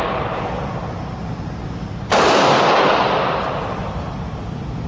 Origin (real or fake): real